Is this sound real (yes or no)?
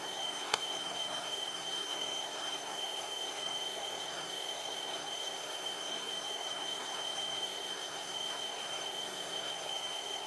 no